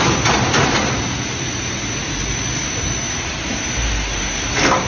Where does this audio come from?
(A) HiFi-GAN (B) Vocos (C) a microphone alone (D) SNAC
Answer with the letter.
C